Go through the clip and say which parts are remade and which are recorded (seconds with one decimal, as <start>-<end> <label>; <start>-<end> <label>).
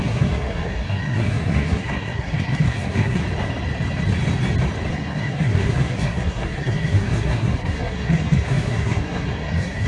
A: 0.0-3.2 remade; 3.2-4.9 recorded; 4.9-9.9 remade